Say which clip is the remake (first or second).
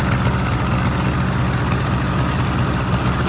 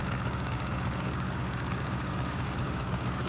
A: second